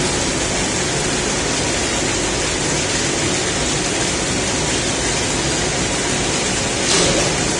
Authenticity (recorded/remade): recorded